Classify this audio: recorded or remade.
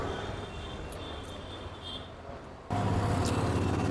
recorded